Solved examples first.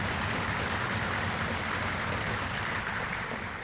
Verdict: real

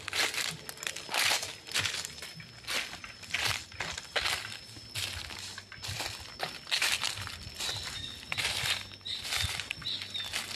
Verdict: real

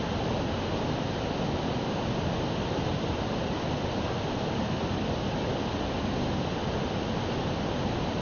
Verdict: real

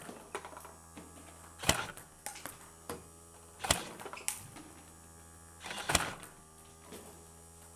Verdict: real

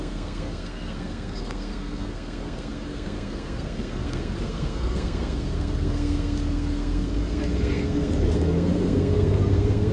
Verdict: fake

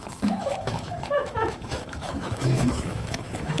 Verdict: fake